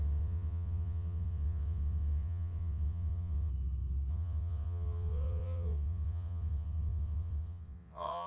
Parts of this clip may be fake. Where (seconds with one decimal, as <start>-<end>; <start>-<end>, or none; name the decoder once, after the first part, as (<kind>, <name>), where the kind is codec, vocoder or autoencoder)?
0.0-3.5 (vocoder, WaveNeXt); 4.1-8.3